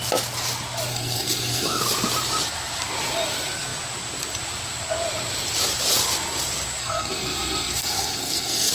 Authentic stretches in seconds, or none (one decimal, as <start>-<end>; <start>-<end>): 0.0-0.9; 1.8-6.8